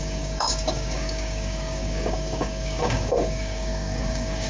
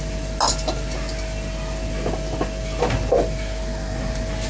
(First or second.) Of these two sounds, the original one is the second